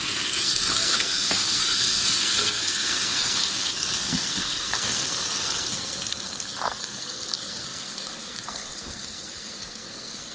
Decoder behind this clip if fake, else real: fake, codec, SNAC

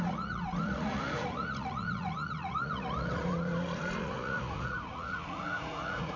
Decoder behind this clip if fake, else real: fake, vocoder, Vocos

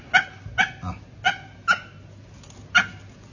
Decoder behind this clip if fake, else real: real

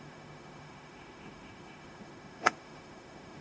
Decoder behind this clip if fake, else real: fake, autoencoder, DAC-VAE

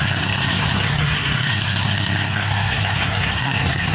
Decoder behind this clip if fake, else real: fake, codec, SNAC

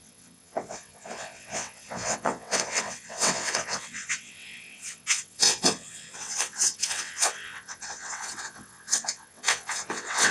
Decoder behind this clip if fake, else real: fake, vocoder, WaveNeXt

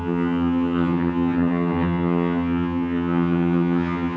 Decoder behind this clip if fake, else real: fake, vocoder, HiFi-GAN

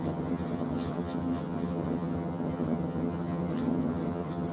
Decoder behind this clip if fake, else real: fake, vocoder, HiFi-GAN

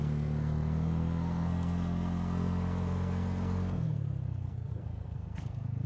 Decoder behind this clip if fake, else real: fake, codec, SNAC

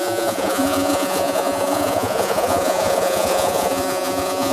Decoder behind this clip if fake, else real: fake, vocoder, Vocos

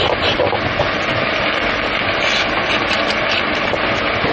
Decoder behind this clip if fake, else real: real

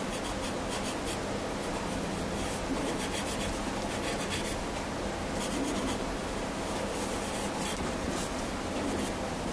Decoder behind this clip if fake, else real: real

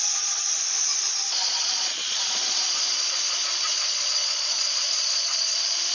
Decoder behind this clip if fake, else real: fake, vocoder, Vocos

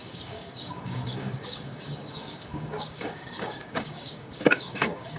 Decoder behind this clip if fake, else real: fake, codec, DAC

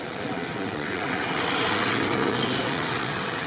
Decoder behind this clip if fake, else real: fake, vocoder, WaveNeXt